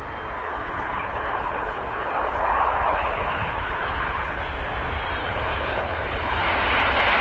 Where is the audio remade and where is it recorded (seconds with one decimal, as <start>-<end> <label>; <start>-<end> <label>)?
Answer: 0.0-0.4 recorded; 0.4-4.4 remade; 4.4-5.2 recorded; 5.2-6.5 remade; 6.5-7.2 recorded